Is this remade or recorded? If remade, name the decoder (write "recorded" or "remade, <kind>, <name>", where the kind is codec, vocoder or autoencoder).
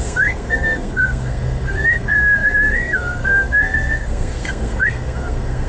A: remade, codec, SNAC